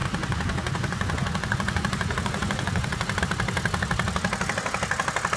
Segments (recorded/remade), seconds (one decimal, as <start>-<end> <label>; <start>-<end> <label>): 0.0-3.2 remade; 3.2-5.4 recorded